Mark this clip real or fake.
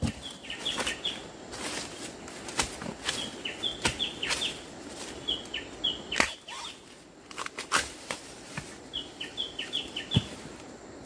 real